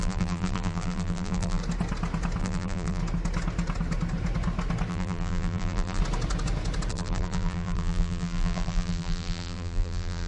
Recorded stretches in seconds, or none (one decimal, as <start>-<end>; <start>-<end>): 1.6-2.4; 3.0-4.9; 6.0-6.9